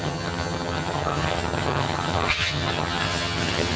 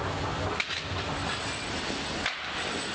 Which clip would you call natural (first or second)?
second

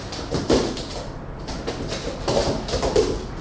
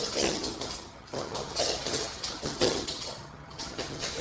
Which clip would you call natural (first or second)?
first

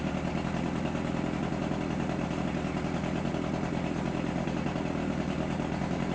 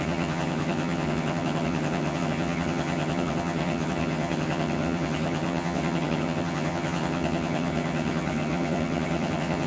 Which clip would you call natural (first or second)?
first